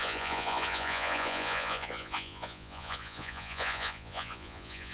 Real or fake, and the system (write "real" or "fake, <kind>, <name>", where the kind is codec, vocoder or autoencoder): fake, vocoder, Vocos